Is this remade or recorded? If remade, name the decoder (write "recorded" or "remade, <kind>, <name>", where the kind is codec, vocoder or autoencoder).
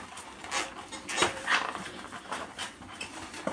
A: recorded